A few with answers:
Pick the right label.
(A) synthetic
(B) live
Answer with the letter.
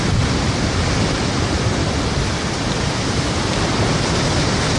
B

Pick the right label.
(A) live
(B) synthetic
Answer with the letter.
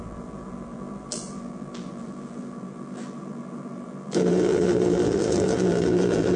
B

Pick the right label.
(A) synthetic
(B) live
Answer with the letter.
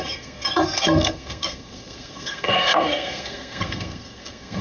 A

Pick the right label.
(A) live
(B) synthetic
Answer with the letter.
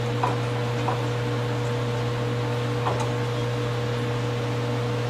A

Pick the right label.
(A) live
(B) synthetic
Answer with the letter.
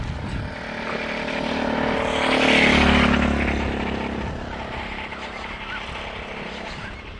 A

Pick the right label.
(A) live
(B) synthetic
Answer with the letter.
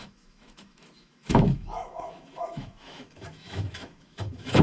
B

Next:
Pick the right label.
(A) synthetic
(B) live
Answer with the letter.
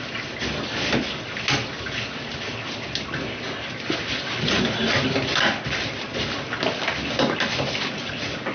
B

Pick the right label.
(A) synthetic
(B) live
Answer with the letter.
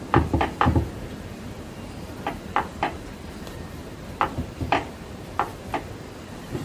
A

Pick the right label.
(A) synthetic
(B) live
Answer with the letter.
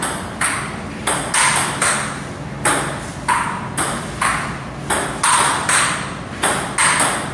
B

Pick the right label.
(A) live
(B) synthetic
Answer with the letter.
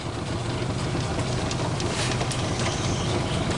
A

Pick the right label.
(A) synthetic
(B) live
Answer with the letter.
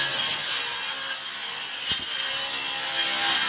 B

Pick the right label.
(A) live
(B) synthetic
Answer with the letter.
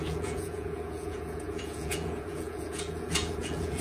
B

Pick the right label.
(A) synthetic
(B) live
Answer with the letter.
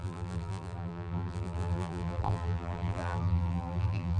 A